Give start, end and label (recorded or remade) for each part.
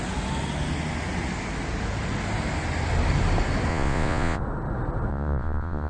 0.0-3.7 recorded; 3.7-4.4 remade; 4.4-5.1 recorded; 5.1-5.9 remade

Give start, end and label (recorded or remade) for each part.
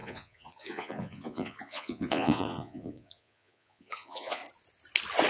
0.0-4.4 remade; 4.4-5.3 recorded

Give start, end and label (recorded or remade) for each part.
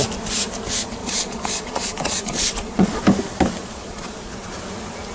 0.0-1.0 recorded; 1.0-3.0 remade; 3.0-3.6 recorded; 3.6-4.5 remade; 4.5-5.1 recorded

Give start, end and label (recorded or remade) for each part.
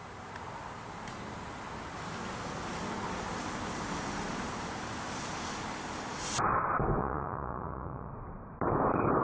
0.0-7.0 recorded; 7.0-8.1 remade; 8.1-9.2 recorded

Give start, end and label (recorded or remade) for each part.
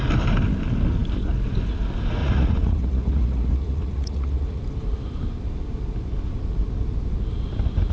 0.0-2.2 recorded; 2.2-4.6 remade; 4.6-7.9 recorded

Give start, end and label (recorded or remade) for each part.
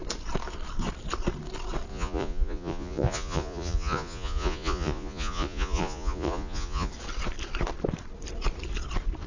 0.0-1.9 recorded; 1.9-6.9 remade; 6.9-9.3 recorded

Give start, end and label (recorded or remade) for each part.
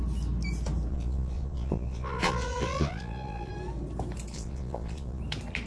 0.0-0.9 recorded; 0.9-3.5 remade; 3.5-4.3 recorded; 4.3-5.2 remade; 5.2-5.7 recorded